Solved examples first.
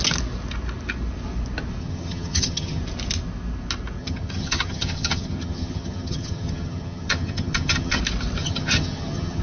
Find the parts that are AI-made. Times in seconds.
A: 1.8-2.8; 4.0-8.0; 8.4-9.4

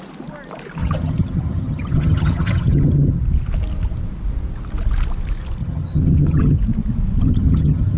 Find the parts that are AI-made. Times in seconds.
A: 0.8-3.2; 5.6-6.6; 7.3-8.0

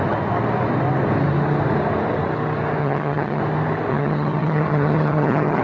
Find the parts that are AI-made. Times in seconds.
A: 2.8-3.4; 3.9-5.6

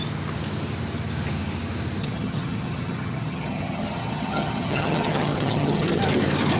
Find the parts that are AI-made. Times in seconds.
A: 2.0-6.0

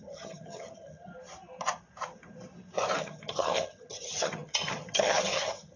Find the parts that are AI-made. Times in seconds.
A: 0.0-1.1; 3.0-5.8